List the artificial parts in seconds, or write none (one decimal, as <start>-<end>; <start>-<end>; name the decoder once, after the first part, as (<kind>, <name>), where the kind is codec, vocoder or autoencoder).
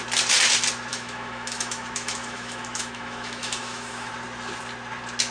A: 0.9-4.1 (autoencoder, DAC-VAE)